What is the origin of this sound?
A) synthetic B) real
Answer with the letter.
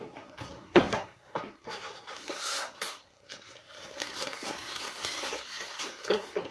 A